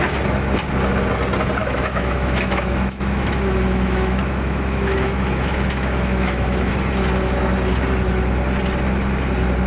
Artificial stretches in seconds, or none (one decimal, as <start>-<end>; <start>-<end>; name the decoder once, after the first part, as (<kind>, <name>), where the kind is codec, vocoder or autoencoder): 1.6-6.7 (autoencoder, DAC-VAE)